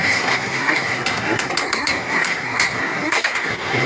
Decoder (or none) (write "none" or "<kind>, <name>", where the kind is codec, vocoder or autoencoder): codec, SNAC